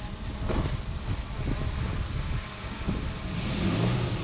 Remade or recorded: recorded